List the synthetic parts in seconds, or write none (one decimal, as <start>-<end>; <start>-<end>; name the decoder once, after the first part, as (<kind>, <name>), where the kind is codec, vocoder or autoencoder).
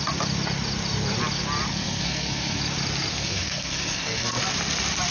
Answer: 1.7-2.6 (codec, SNAC); 3.1-4.4